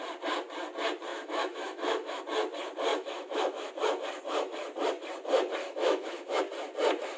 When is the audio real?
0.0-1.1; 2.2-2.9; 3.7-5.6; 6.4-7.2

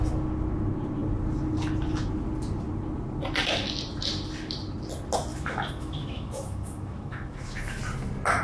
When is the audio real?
0.0-5.3; 7.8-8.4